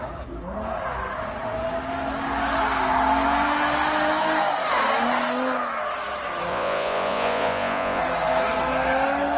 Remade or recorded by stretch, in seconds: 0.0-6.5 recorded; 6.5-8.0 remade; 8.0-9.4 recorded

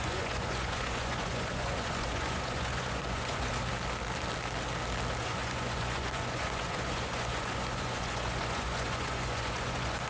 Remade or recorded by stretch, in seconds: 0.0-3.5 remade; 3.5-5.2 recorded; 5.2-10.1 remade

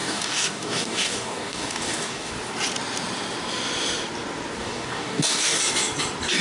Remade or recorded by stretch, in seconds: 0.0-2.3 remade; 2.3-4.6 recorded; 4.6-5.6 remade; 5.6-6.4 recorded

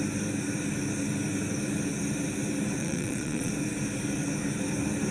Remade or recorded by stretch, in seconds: 0.0-2.8 recorded; 2.8-3.5 remade; 3.5-5.1 recorded

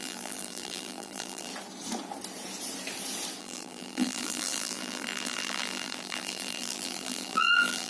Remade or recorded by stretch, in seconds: 0.0-1.5 remade; 1.5-3.4 recorded; 3.4-7.9 remade

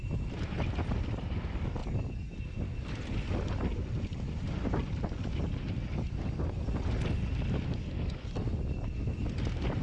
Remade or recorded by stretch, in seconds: 0.0-9.8 recorded